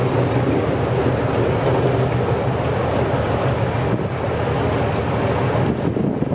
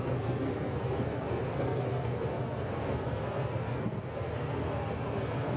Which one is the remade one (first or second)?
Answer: second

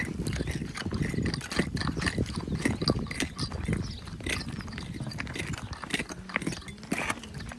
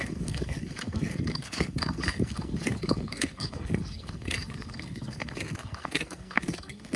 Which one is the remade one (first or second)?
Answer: second